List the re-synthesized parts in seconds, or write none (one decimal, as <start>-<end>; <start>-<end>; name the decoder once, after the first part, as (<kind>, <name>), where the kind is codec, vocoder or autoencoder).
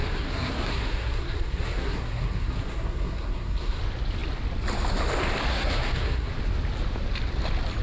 0.0-3.8 (codec, SNAC); 5.5-6.3